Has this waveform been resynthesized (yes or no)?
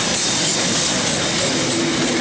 no